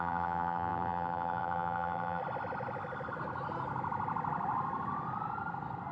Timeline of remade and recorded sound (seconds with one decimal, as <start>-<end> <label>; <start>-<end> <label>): 0.0-2.2 remade; 2.2-5.9 recorded